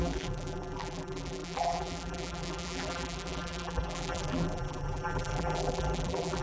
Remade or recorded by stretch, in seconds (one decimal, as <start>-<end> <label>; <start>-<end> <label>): 0.0-6.4 remade